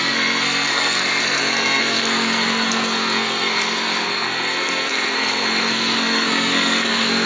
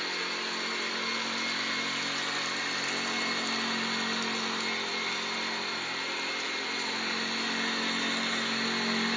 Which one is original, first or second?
second